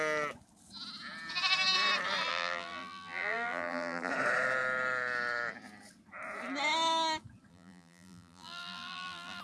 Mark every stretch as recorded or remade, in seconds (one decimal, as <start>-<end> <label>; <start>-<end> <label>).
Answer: 0.0-2.3 recorded; 2.3-4.1 remade; 4.1-7.5 recorded; 7.5-9.4 remade